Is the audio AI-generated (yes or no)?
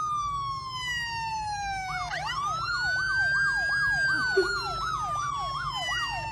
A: no